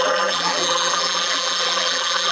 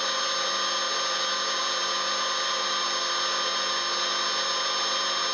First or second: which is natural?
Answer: second